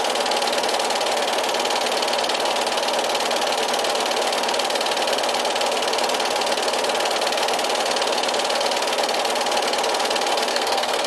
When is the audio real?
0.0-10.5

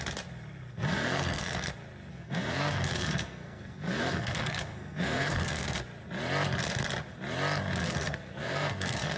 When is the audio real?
0.0-0.7; 1.7-2.1; 5.8-7.8

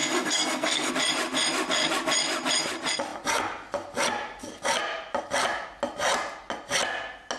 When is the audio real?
0.9-7.4

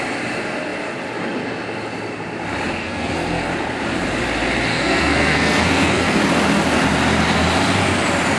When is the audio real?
0.0-2.8; 3.5-4.7; 6.2-8.4

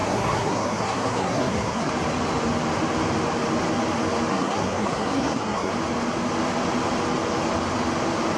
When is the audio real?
1.9-4.3; 5.7-8.4

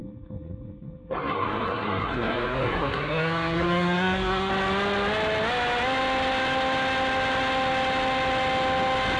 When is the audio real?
4.5-9.2